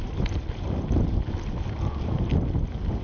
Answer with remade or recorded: recorded